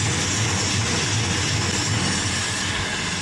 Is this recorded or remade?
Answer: recorded